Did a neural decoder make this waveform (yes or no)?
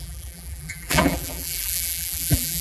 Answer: yes